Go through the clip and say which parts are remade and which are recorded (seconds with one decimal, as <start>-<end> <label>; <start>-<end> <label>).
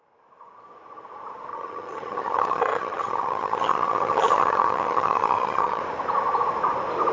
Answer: 0.0-1.5 recorded; 1.5-5.8 remade; 5.8-7.1 recorded